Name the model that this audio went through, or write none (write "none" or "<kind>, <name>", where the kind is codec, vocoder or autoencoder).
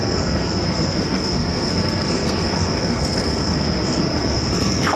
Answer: codec, SNAC